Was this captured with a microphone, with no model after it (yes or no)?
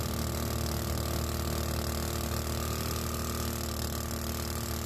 yes